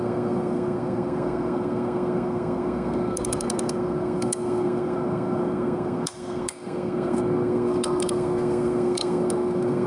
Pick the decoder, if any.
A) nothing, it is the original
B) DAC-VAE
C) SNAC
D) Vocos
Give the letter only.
C